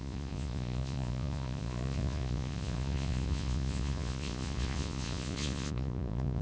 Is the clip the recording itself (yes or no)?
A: no